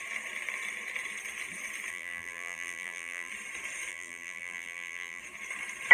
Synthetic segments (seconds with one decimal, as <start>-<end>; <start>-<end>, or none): 1.9-3.3; 3.9-5.2